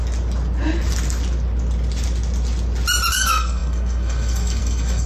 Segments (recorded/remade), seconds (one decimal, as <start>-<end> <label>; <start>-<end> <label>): 0.0-3.1 recorded; 3.1-5.1 remade